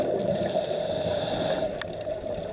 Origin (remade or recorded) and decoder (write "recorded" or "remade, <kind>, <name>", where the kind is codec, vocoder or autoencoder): recorded